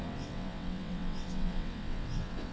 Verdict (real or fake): fake